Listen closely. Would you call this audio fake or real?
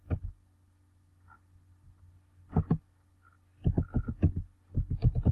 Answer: real